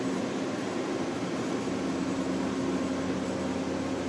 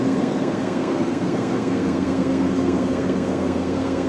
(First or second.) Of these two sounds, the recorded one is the first